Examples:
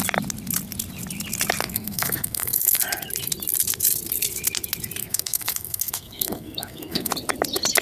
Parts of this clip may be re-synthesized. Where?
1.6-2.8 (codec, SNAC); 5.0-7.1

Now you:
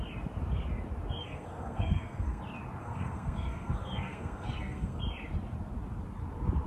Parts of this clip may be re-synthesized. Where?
1.2-2.4 (codec, SNAC); 2.8-5.0

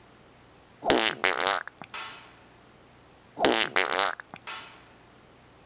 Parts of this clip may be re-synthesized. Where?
none

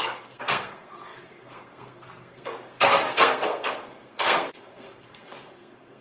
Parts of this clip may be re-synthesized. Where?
0.0-6.0 (codec, SNAC)

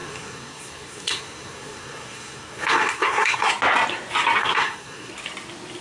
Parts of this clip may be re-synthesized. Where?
0.0-3.5 (codec, SNAC); 4.4-5.1

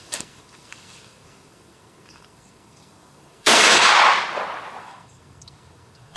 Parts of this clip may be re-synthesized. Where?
0.0-3.9 (codec, SNAC); 4.8-6.2

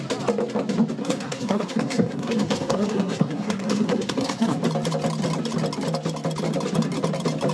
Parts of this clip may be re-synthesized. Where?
1.0-4.6 (codec, SNAC)

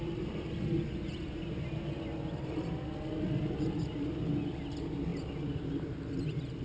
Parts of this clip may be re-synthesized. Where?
none